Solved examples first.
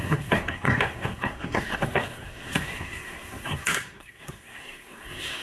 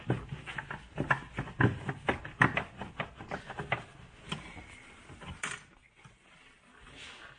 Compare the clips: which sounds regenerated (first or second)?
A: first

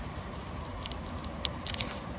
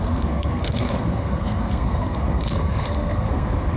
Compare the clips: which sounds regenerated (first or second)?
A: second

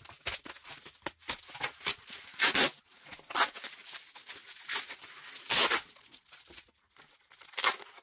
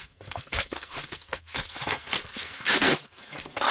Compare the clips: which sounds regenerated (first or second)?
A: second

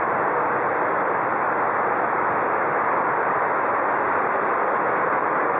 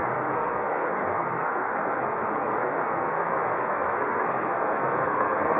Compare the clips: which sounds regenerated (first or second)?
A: second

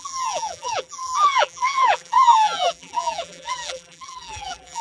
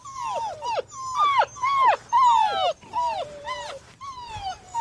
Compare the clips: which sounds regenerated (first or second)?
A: first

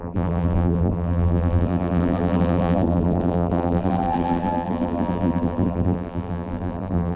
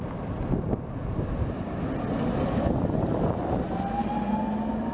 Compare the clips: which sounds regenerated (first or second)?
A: first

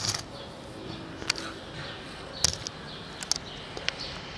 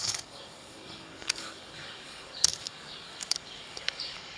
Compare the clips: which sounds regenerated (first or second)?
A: second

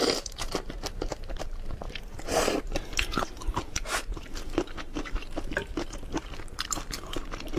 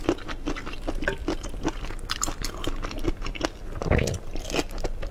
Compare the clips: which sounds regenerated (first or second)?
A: first